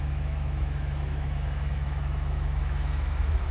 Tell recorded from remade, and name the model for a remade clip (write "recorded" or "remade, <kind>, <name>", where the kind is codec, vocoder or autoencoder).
remade, autoencoder, DAC-VAE